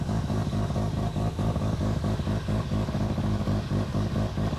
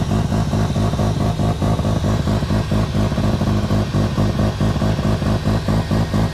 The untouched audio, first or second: second